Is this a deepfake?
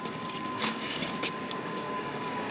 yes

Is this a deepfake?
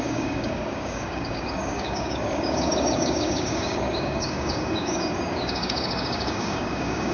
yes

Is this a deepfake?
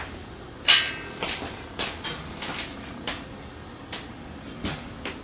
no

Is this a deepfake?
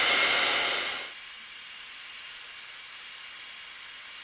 no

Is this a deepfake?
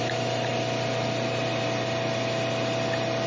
no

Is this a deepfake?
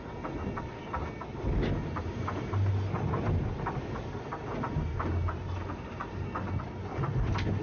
no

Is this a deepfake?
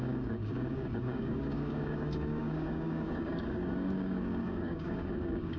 yes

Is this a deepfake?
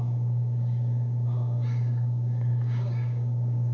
yes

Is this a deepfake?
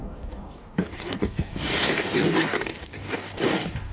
yes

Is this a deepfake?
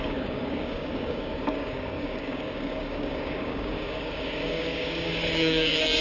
yes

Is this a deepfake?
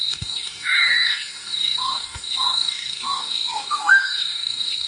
yes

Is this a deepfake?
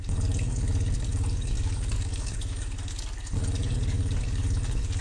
yes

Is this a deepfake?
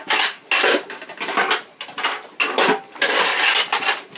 no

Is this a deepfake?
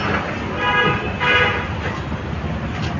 no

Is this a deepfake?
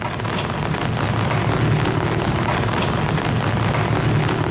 no